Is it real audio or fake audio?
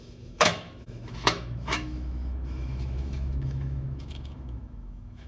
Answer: fake